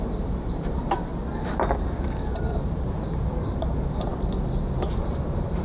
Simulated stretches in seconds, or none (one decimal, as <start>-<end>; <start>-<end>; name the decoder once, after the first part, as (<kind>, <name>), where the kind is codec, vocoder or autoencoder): 0.0-1.1 (vocoder, BigVGAN v2); 1.9-4.1; 4.9-5.6